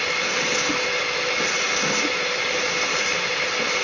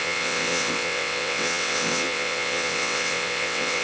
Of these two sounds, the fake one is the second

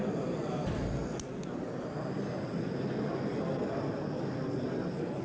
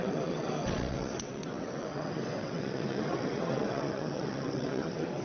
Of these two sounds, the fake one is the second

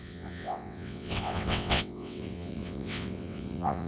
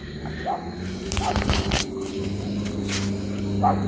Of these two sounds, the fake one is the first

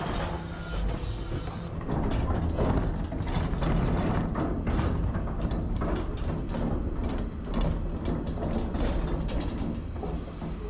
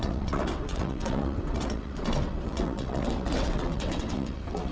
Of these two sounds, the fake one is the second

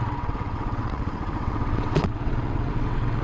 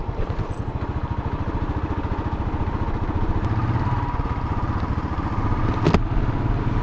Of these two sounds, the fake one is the first